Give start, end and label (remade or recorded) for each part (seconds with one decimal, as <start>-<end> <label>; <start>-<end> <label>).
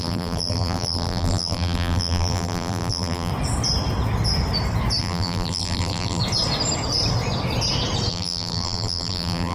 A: 0.0-3.3 remade; 3.3-5.0 recorded; 5.0-6.2 remade; 6.2-8.1 recorded; 8.1-9.5 remade